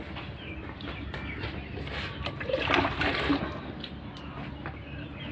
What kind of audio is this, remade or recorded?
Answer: recorded